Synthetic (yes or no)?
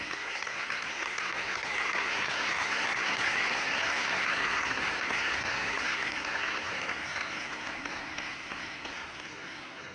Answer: yes